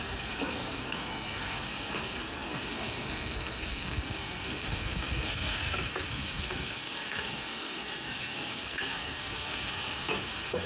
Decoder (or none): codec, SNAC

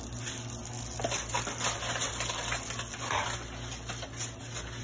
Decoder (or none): none